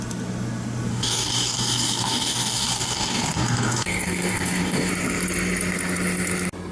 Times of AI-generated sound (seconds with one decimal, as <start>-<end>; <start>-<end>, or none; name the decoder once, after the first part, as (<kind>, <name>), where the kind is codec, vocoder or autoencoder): 0.9-4.9 (codec, DAC)